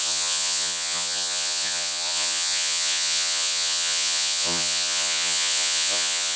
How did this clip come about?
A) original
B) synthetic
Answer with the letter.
B